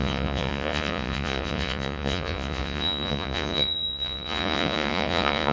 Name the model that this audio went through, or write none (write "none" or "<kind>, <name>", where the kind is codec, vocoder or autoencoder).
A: vocoder, Vocos